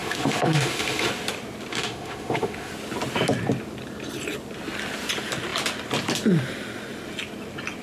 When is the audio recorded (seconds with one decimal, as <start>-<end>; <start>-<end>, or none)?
1.1-1.7; 2.7-7.8

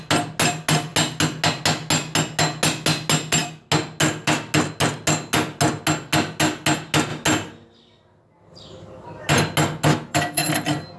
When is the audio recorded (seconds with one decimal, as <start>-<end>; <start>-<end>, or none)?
0.0-9.9; 10.5-11.0

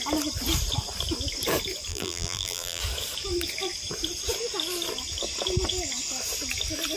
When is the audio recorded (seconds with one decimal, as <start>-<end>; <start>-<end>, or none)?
0.0-1.9; 2.8-7.0